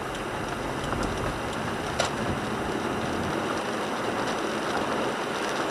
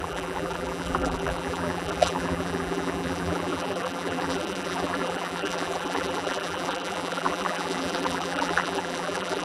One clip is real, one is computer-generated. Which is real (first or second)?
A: first